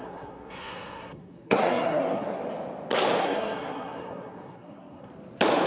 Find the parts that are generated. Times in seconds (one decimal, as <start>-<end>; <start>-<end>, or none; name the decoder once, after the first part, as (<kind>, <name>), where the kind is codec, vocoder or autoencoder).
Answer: 0.0-2.4 (codec, SNAC); 3.2-5.1